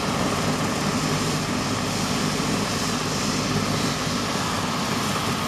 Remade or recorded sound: recorded